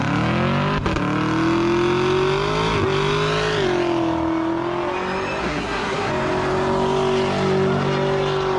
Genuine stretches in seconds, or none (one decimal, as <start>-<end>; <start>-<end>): 0.0-5.4; 6.1-8.6